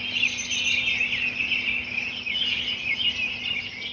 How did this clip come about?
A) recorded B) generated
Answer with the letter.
A